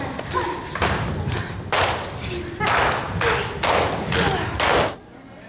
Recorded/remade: recorded